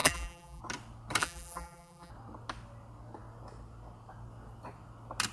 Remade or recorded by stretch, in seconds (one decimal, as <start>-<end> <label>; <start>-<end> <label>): 0.0-0.6 remade; 0.6-1.2 recorded; 1.2-2.1 remade; 2.1-5.3 recorded